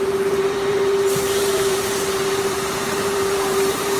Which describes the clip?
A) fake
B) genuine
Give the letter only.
A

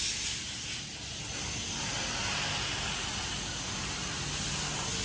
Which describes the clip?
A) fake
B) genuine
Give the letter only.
B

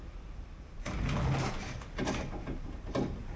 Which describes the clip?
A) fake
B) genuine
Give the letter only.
A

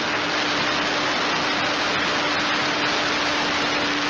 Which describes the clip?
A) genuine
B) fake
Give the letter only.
A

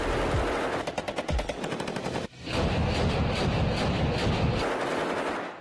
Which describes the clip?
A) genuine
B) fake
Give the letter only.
B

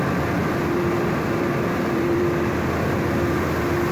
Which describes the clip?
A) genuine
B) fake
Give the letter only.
B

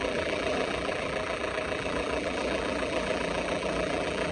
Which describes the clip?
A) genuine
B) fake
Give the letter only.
B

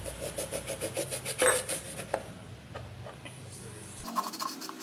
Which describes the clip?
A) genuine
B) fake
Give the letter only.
A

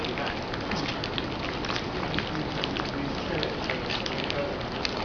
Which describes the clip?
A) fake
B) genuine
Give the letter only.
B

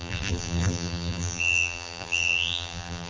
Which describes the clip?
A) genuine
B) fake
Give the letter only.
B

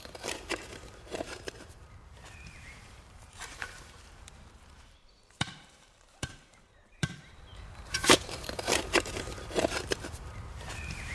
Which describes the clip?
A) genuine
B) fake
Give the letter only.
B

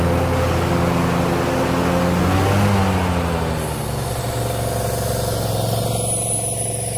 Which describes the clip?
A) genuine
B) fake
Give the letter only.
A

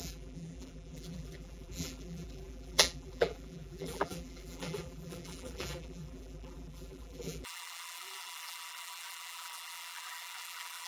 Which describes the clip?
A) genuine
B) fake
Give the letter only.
B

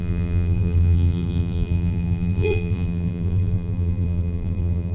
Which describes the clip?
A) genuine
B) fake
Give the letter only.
B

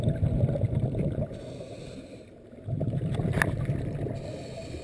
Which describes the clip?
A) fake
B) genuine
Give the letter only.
A